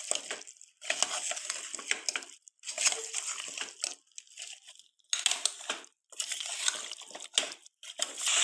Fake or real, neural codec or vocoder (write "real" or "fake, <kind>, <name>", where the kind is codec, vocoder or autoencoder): real